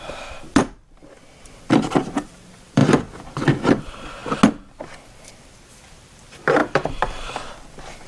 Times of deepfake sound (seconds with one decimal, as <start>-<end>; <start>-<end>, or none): 0.0-4.2; 5.3-8.1